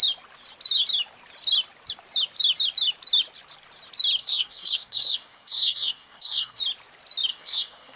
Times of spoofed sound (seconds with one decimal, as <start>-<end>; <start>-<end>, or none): 4.2-6.6; 7.3-8.0